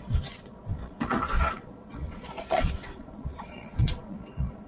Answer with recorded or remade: remade